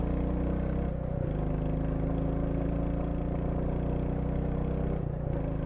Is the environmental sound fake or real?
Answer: real